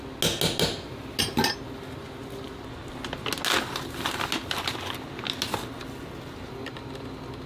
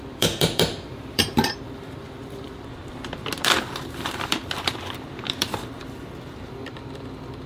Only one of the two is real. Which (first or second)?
first